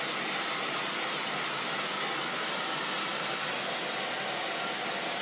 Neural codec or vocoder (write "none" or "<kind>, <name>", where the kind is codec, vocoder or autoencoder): none